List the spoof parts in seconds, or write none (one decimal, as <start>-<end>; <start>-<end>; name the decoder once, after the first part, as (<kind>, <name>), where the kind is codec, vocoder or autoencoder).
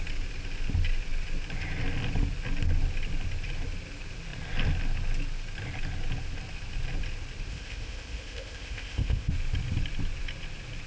7.5-9.3 (codec, ZipCodec)